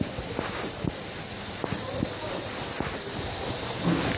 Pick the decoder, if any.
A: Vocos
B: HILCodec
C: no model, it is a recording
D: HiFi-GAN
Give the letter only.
C